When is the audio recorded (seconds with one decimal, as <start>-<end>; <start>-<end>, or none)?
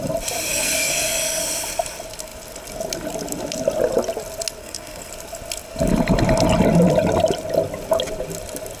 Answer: 0.0-0.5; 1.4-4.6; 5.1-8.8